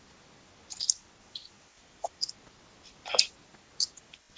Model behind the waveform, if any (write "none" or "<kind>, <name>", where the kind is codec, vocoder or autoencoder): none